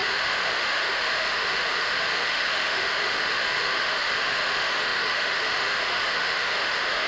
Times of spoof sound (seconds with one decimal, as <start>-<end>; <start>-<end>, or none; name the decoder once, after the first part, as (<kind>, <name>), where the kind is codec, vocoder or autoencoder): 0.0-7.1 (autoencoder, DAC-VAE)